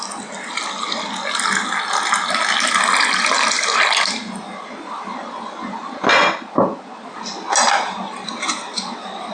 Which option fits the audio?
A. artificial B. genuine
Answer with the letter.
B